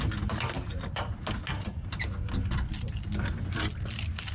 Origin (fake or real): real